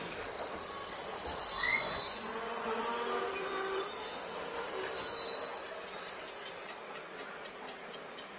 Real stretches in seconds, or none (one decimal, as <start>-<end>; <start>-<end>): 0.0-1.7; 2.8-8.4